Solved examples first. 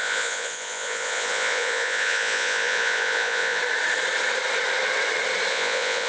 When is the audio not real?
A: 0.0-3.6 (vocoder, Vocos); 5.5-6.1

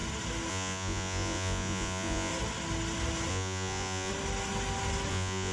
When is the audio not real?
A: 0.5-2.3 (vocoder, Vocos); 3.3-4.1; 5.1-5.5

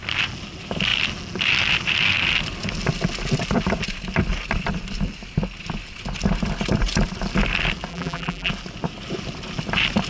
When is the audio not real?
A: 7.9-8.5 (vocoder, BigVGAN v2)